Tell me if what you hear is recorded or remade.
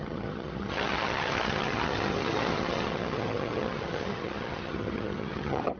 remade